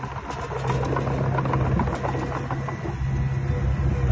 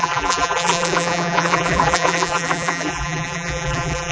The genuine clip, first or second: first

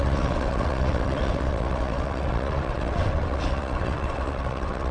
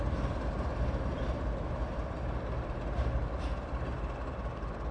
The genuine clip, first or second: second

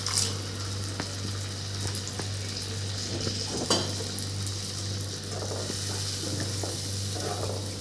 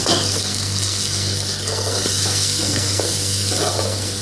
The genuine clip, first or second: first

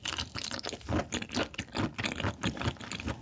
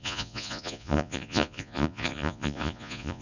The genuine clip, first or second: first